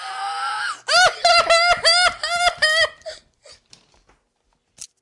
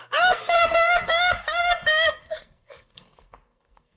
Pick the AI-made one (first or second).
second